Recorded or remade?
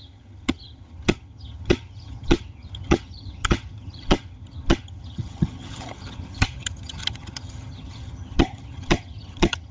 remade